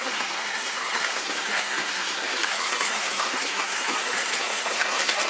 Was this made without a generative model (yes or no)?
no